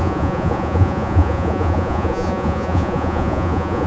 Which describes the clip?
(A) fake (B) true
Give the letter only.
A